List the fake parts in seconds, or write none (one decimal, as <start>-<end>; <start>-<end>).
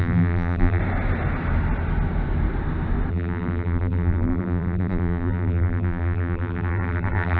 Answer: 0.0-0.8; 3.1-7.4